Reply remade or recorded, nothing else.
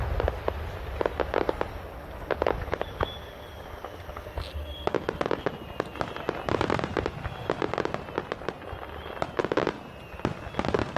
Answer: recorded